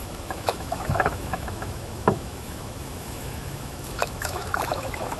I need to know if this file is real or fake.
fake